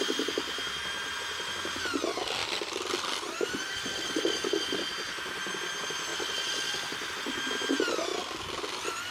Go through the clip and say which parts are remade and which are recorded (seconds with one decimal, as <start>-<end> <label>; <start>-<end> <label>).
0.0-2.4 recorded; 2.4-4.8 remade; 4.8-6.1 recorded; 6.1-7.1 remade; 7.1-9.1 recorded